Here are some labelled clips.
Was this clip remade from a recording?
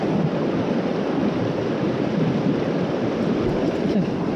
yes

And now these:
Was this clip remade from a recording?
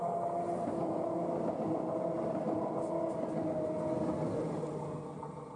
no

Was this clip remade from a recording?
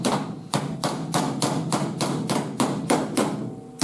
no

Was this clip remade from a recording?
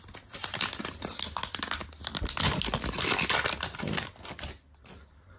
no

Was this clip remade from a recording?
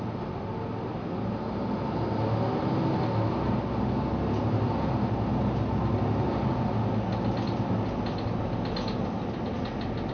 no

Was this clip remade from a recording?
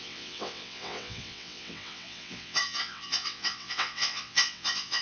yes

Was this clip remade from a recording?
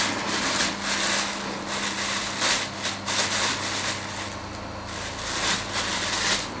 no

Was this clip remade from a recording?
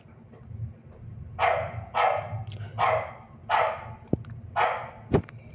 no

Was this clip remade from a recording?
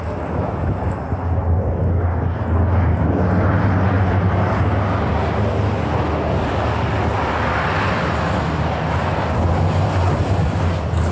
no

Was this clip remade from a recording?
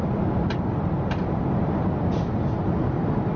no